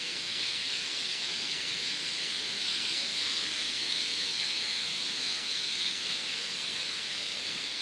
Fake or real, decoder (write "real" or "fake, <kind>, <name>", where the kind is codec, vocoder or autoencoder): fake, codec, SNAC